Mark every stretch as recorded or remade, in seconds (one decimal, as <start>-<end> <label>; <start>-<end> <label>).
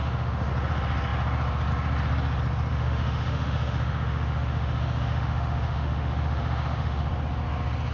0.0-0.5 remade; 0.5-2.7 recorded; 2.7-7.1 remade; 7.1-7.9 recorded